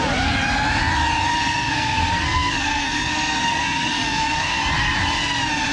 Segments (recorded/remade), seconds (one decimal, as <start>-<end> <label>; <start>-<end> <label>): 0.0-1.3 recorded; 1.3-4.6 remade; 4.6-5.7 recorded